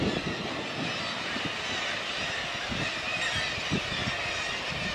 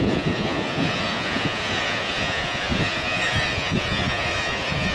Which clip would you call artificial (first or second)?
second